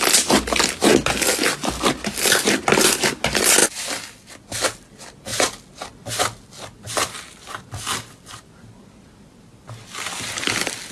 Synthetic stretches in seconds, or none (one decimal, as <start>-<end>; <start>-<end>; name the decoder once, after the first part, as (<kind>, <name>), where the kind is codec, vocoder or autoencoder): none